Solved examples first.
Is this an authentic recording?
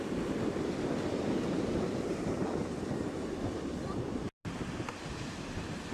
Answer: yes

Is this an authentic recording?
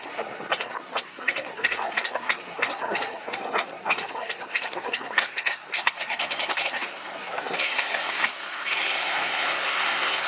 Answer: no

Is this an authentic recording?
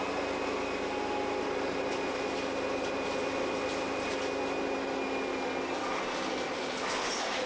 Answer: yes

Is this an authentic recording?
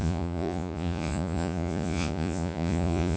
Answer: no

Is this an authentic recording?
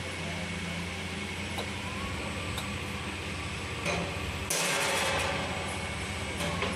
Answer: yes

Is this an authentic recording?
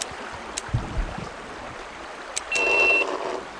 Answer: yes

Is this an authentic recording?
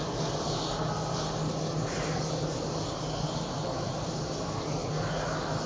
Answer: yes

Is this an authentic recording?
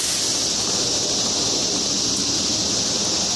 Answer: yes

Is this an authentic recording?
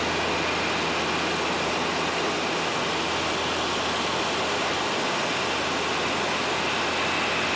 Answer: yes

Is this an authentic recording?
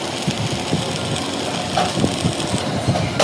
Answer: yes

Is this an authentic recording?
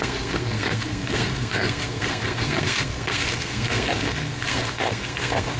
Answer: no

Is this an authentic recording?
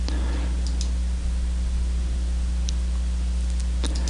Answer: yes